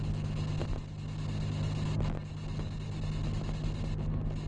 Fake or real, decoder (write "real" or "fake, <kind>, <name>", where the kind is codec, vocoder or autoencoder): real